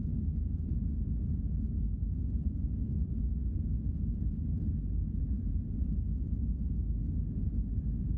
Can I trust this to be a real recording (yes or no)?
yes